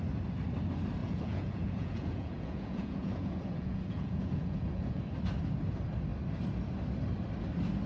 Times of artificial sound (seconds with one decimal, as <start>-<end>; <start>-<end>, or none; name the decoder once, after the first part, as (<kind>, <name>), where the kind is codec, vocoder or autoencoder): 1.0-5.0 (vocoder, Vocos)

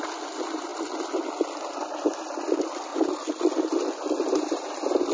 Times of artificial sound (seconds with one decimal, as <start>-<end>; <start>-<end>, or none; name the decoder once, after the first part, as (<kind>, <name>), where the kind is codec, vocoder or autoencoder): 0.0-0.7 (vocoder, BigVGAN v2); 1.7-2.9; 4.4-5.1

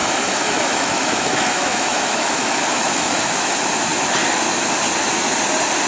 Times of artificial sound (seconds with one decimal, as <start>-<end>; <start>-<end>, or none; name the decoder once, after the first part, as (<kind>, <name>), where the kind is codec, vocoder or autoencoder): 0.0-3.5 (autoencoder, DAC-VAE)